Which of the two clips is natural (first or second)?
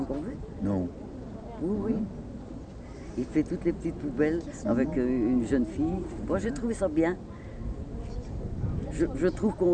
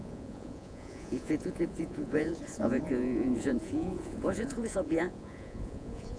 first